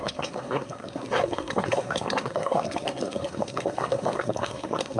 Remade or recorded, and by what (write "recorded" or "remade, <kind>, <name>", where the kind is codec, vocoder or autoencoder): remade, codec, SNAC